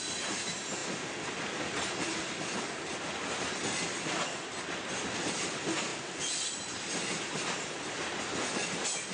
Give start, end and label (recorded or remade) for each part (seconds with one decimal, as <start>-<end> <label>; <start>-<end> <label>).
0.0-9.1 recorded